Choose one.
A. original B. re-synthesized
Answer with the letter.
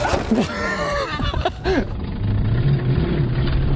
A